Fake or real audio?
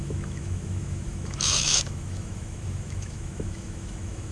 fake